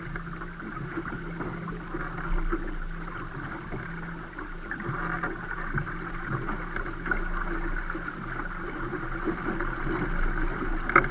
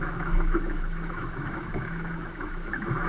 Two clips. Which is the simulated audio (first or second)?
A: second